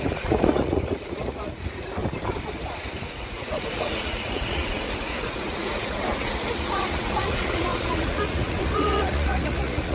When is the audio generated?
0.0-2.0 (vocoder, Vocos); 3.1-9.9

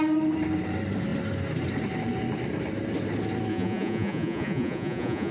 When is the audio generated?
3.5-5.3 (vocoder, Vocos)

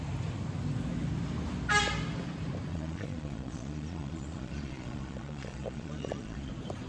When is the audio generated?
2.7-6.5 (vocoder, Vocos)

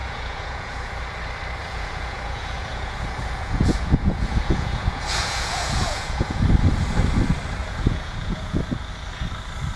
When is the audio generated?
0.0-0.9 (vocoder, Vocos); 1.6-6.4; 7.6-8.6

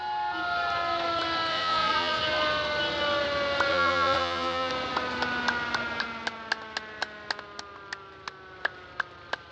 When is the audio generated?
1.5-2.2 (vocoder, Vocos); 3.7-4.7